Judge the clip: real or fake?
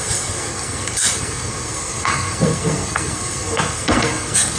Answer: fake